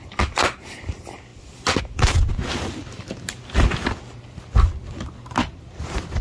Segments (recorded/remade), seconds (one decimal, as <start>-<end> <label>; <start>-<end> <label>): 0.0-6.2 recorded